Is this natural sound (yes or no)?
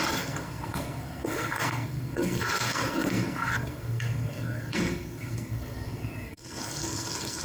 no